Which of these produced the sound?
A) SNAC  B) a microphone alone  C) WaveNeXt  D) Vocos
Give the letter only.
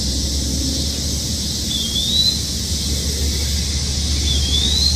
B